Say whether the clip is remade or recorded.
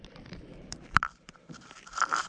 remade